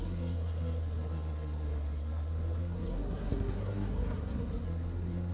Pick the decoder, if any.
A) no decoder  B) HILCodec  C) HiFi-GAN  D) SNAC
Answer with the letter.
D